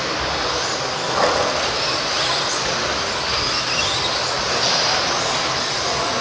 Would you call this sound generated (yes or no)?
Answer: no